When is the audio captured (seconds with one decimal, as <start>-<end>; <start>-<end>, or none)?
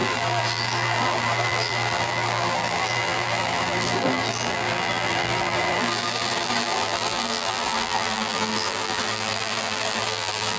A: none